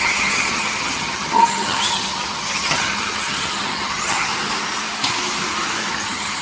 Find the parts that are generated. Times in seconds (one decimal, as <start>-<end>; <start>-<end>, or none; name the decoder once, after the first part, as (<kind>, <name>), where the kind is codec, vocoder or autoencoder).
0.0-4.3 (vocoder, HiFi-GAN); 5.9-6.4